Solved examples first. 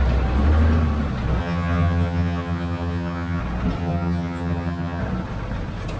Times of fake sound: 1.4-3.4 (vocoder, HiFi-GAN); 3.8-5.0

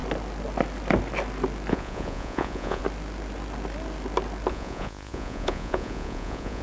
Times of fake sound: 1.7-2.8 (vocoder, Vocos); 4.5-6.6

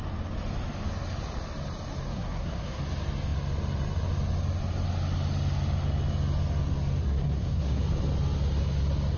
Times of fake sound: 2.1-2.8 (codec, SNAC); 7.0-7.8

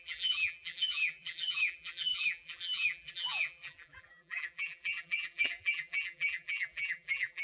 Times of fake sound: 0.0-7.4 (vocoder, BigVGAN v2)

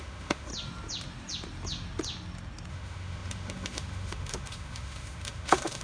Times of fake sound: 0.0-0.5 (autoencoder, DAC-VAE); 2.7-5.8

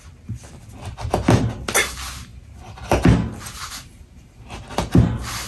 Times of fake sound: none